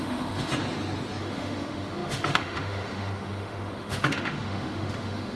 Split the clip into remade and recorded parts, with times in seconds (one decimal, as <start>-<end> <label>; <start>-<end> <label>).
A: 0.0-0.5 remade; 0.5-1.2 recorded; 1.2-5.4 remade